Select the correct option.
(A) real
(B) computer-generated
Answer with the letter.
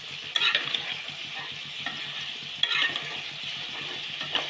A